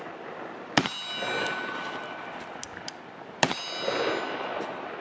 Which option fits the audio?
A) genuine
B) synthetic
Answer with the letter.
A